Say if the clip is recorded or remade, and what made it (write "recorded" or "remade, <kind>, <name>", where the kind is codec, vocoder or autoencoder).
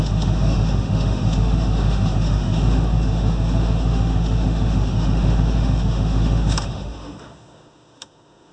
remade, autoencoder, DAC-VAE